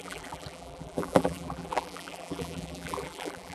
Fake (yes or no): yes